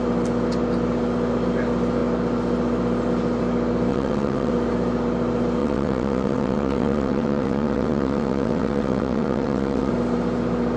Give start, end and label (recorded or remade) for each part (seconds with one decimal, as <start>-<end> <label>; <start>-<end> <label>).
0.0-3.9 recorded; 3.9-4.5 remade; 4.5-5.6 recorded; 5.6-9.9 remade; 9.9-10.8 recorded